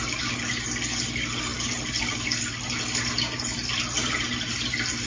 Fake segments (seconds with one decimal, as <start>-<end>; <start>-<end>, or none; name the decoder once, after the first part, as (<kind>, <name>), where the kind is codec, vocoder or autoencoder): none